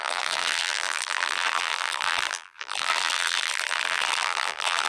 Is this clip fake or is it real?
fake